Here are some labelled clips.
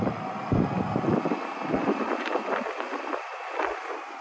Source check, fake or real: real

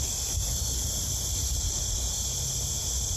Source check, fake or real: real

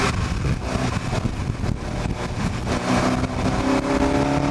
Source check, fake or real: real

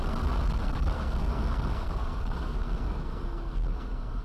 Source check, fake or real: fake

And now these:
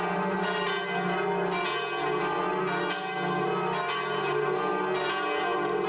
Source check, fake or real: real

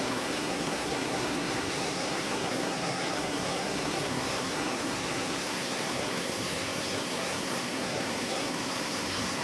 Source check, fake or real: fake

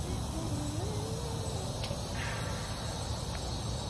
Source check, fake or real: real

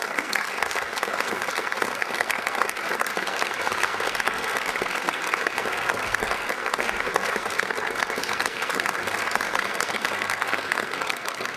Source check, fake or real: fake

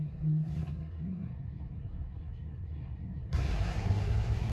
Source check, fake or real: fake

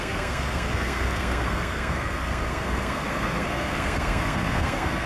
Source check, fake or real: fake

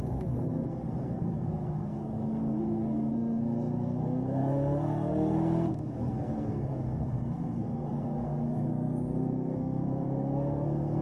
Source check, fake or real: fake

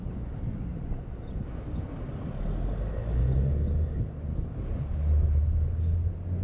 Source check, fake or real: real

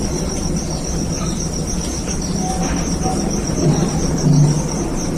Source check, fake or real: real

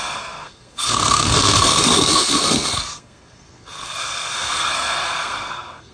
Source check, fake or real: fake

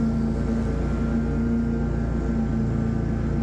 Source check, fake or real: real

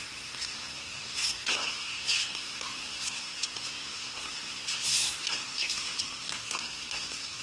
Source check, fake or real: fake